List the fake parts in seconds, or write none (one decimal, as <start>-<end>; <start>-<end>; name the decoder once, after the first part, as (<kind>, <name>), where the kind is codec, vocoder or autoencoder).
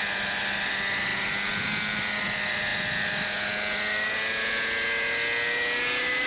none